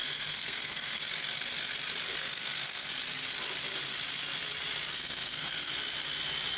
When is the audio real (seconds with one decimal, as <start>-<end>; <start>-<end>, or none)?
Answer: 1.0-2.1; 2.9-4.9; 5.7-6.6